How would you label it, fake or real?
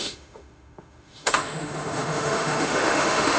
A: fake